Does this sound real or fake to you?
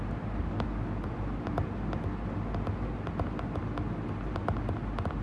real